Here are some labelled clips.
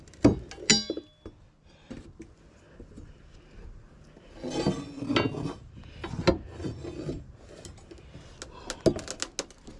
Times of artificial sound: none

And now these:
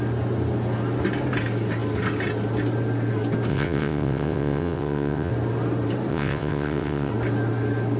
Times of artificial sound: 3.5-5.3 (vocoder, WaveNeXt); 6.1-7.1